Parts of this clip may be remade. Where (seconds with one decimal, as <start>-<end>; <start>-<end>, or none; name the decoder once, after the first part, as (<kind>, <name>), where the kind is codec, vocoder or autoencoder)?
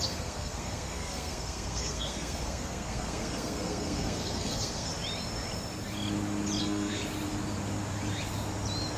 0.0-4.9 (codec, SNAC); 6.6-7.0